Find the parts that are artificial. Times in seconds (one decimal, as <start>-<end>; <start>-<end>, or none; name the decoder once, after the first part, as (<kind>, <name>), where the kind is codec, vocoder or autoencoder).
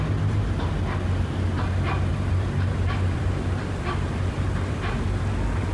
2.1-4.9 (vocoder, BigVGAN v2)